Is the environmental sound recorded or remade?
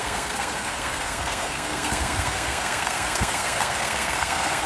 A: remade